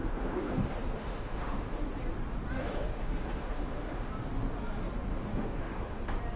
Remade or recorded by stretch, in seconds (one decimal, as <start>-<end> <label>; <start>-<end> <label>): 0.0-1.8 remade; 1.8-2.6 recorded; 2.6-4.1 remade; 4.1-5.1 recorded; 5.1-6.0 remade; 6.0-6.4 recorded